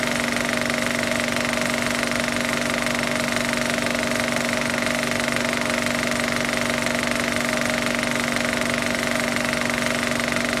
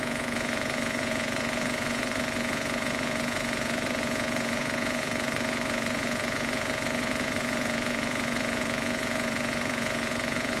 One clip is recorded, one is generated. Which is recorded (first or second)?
first